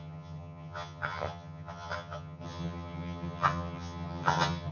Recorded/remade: remade